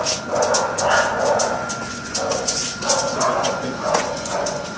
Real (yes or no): no